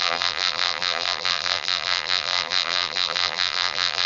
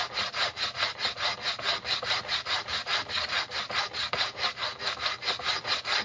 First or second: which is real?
second